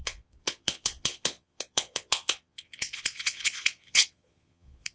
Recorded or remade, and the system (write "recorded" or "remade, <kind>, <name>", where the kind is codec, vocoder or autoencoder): remade, vocoder, Vocos